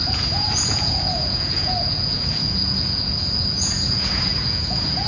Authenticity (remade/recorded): remade